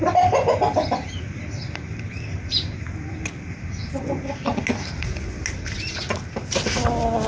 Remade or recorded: recorded